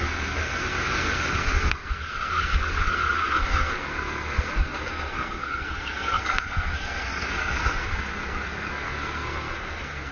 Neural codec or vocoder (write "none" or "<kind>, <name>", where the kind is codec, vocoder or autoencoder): codec, SNAC